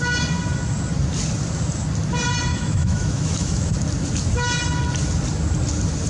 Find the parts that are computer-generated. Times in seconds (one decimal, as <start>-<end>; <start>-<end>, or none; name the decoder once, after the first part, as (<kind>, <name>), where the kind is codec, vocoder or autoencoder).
2.5-3.7 (autoencoder, DAC-VAE)